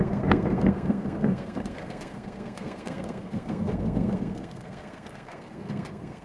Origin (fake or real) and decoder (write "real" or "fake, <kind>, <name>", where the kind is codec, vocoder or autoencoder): fake, codec, SNAC